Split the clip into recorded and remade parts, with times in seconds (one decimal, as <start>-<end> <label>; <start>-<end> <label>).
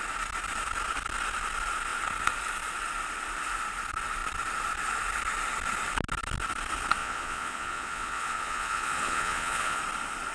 0.0-7.0 recorded; 7.0-9.8 remade; 9.8-10.3 recorded